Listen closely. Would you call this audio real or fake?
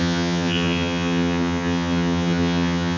fake